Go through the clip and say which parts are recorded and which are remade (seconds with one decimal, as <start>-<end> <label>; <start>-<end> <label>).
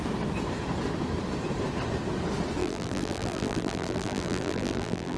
0.0-2.6 recorded; 2.6-5.2 remade